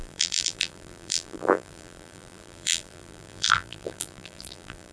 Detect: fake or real fake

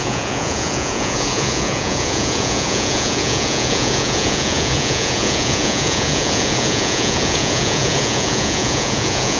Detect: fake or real fake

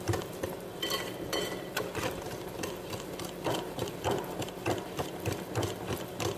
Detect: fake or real fake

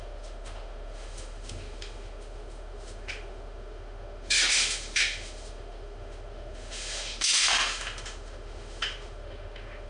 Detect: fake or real fake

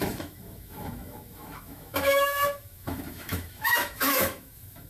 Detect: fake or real fake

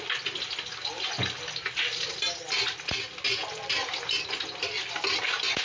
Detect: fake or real real